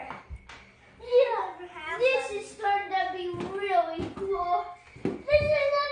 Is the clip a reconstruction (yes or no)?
no